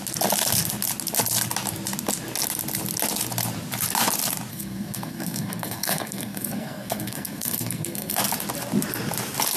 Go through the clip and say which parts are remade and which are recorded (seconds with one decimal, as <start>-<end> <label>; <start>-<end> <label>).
0.0-4.5 recorded; 4.5-8.2 remade; 8.2-9.6 recorded